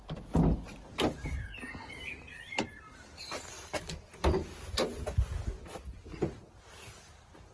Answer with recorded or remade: recorded